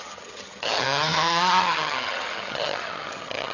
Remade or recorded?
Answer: remade